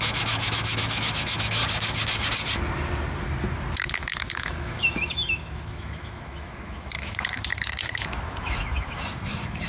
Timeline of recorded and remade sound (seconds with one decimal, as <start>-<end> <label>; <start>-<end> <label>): 0.0-1.6 remade; 1.6-3.9 recorded; 3.9-9.7 remade